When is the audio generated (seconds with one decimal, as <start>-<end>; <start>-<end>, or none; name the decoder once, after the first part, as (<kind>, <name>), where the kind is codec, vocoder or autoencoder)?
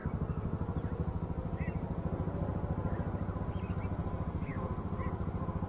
3.4-5.7 (vocoder, BigVGAN v2)